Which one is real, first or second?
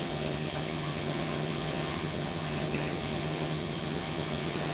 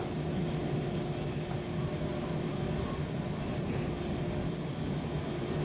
second